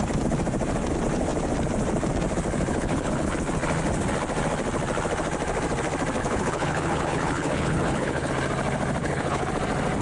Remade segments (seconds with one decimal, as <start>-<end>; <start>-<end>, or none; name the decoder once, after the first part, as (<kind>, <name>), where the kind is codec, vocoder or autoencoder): 2.7-3.3 (codec, HILCodec); 6.2-8.3; 9.0-9.5